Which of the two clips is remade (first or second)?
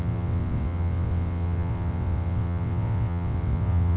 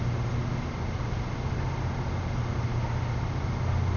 first